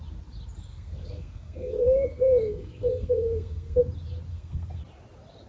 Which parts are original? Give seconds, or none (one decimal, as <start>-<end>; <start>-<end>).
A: 0.0-0.7; 3.8-4.3; 4.8-5.5